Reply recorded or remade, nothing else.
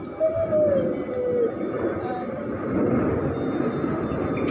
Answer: recorded